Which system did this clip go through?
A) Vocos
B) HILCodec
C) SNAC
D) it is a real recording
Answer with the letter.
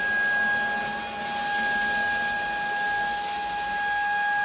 D